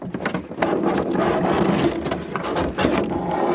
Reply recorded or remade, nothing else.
recorded